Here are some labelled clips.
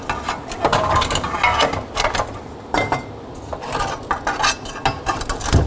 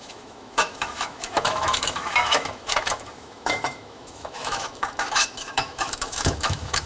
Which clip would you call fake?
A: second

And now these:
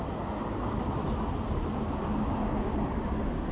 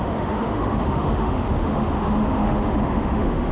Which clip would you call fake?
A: second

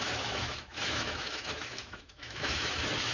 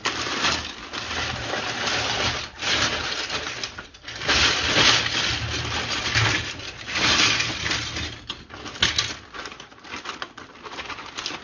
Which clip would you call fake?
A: first